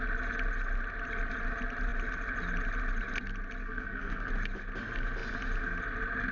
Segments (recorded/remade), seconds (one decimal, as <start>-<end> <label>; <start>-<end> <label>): 0.0-3.6 recorded; 3.6-4.3 remade; 4.3-6.3 recorded